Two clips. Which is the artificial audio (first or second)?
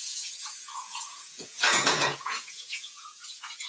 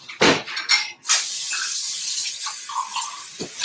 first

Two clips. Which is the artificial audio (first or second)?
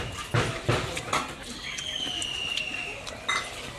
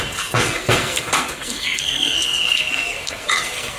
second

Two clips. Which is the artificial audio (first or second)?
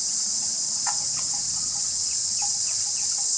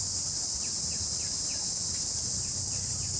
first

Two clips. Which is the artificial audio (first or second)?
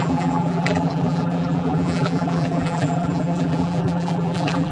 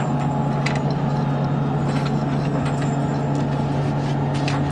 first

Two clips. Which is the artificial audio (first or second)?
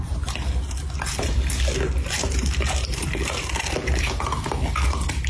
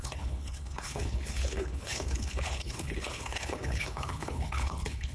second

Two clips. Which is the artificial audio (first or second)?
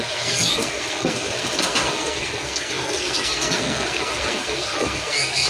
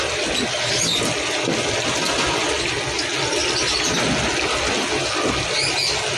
first